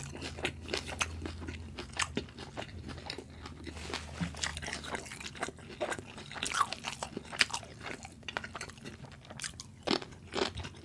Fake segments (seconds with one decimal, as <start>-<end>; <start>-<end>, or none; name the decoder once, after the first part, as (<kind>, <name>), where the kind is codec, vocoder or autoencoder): none